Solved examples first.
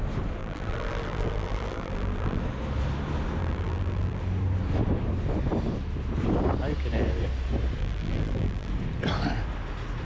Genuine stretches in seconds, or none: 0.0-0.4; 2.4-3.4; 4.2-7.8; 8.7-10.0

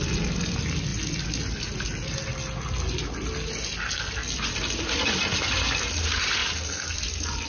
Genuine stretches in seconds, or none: 0.0-6.4

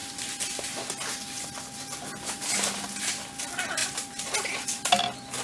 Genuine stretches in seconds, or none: 0.0-3.8; 5.0-5.4

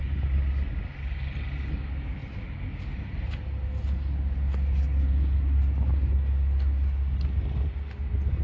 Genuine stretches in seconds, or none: 0.0-2.2; 3.3-8.4